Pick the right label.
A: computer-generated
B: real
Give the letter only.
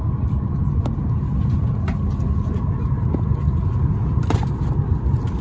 B